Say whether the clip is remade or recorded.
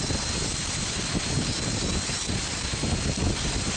recorded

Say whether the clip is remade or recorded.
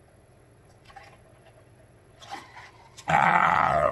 remade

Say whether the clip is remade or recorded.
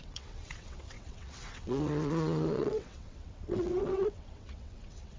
remade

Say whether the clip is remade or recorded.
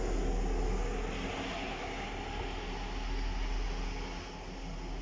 recorded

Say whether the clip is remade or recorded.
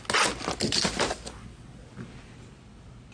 recorded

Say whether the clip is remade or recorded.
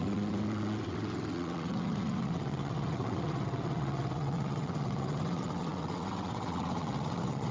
remade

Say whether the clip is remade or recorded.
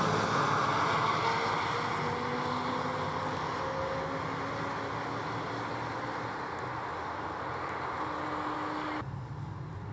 recorded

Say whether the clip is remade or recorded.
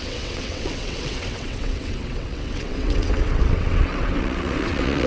remade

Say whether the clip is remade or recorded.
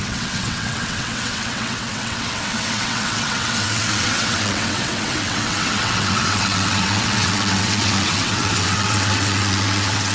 remade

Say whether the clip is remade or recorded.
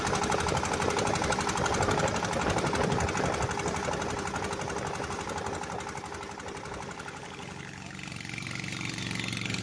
recorded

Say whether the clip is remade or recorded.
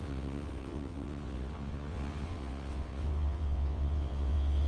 remade